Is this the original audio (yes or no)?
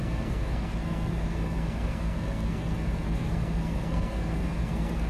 no